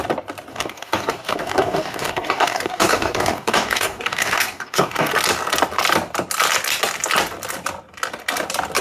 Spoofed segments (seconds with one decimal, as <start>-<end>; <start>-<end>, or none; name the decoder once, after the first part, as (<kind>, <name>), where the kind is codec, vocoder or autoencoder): 0.5-5.1 (codec, DAC)